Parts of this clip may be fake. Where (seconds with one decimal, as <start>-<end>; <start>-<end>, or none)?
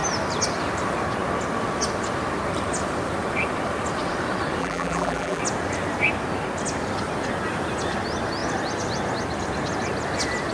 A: 4.6-5.4